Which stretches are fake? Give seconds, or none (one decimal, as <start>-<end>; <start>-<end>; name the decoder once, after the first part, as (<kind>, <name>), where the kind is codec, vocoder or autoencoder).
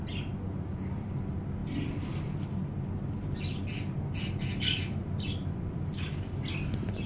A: 1.6-2.5 (vocoder, BigVGAN v2); 5.0-5.9